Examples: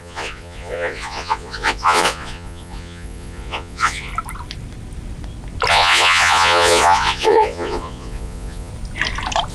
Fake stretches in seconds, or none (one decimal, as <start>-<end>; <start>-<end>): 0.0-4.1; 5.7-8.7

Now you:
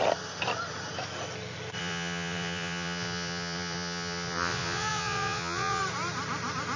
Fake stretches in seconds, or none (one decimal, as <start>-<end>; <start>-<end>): 1.8-5.8

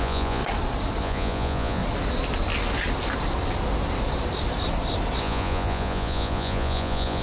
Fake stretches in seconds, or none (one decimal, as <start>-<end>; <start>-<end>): 0.0-0.4; 1.0-1.8; 5.2-7.2

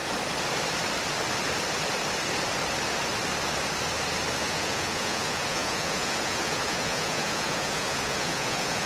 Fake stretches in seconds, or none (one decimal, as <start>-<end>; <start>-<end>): 4.4-8.9

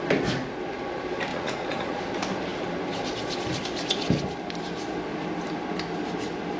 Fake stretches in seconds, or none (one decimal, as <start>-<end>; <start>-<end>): 1.3-2.0

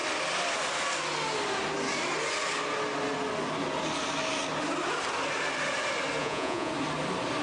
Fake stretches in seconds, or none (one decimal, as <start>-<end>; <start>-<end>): 6.2-6.7